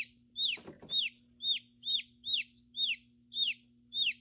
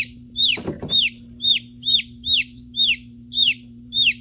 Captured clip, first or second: first